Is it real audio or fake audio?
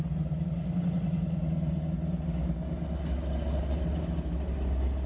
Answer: real